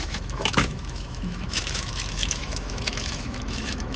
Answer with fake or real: fake